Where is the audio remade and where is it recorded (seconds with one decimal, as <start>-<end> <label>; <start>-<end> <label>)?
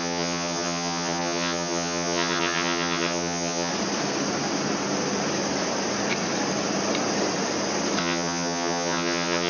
0.0-3.7 remade; 3.7-8.0 recorded; 8.0-9.5 remade